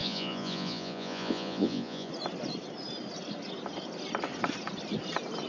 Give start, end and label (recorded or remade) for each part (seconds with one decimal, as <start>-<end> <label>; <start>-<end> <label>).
0.0-2.1 remade; 2.1-5.5 recorded